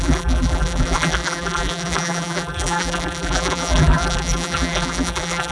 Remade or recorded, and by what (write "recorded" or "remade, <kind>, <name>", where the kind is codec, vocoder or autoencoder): remade, vocoder, BigVGAN v2